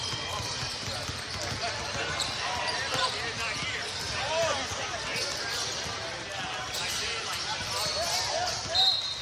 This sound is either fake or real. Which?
real